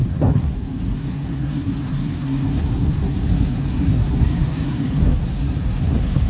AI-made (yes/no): yes